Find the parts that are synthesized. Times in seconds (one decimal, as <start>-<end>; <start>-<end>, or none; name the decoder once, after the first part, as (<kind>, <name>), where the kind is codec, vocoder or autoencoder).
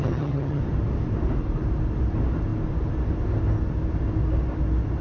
0.0-0.6 (vocoder, HiFi-GAN)